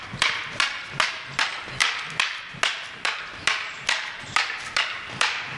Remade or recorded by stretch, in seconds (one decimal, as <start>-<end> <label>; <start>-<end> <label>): 0.0-5.6 recorded